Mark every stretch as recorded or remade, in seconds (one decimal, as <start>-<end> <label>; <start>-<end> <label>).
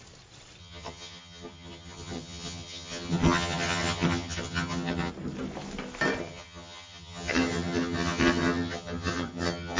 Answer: 0.0-0.6 recorded; 0.6-5.1 remade; 5.1-6.2 recorded; 6.2-9.8 remade